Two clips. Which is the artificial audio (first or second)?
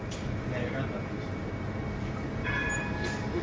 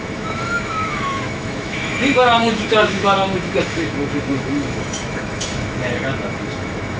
second